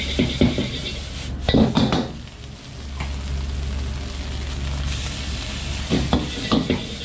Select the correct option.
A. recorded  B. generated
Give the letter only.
A